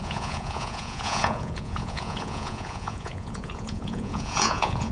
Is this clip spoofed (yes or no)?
yes